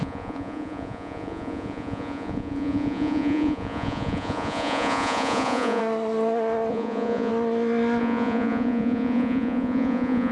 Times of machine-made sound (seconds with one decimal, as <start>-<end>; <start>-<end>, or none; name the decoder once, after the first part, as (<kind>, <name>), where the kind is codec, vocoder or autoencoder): 0.0-5.8 (vocoder, Vocos); 6.7-7.3; 8.0-10.3